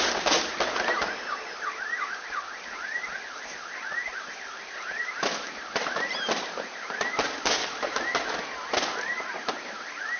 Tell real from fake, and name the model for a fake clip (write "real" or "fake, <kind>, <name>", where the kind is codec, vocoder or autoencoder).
real